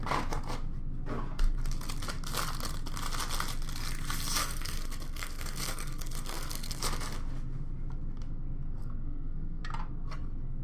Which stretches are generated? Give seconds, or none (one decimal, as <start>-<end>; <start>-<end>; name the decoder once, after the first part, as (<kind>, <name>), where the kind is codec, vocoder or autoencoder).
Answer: 4.4-6.8 (codec, SNAC); 8.8-9.6